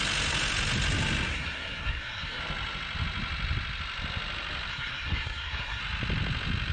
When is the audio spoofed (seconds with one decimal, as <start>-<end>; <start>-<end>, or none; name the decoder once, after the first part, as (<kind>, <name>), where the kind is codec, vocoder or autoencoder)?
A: 1.3-2.4 (codec, SNAC); 4.7-5.8